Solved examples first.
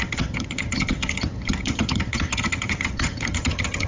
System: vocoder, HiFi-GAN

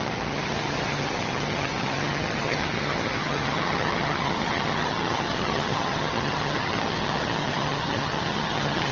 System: vocoder, HiFi-GAN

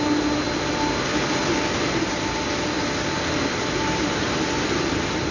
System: none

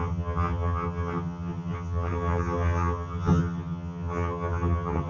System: vocoder, HiFi-GAN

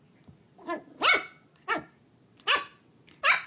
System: none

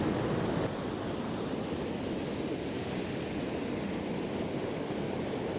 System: none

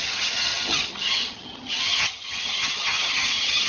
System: vocoder, HiFi-GAN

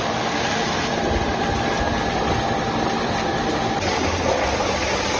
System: none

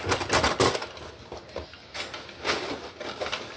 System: none